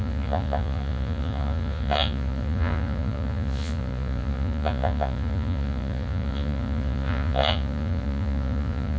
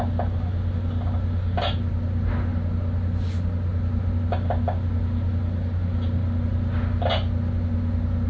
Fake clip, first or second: first